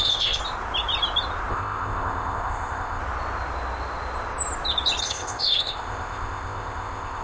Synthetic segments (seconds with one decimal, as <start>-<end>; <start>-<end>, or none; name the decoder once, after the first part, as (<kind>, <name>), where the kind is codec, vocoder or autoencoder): 0.0-0.4 (codec, ZipCodec); 1.5-3.0; 5.0-7.2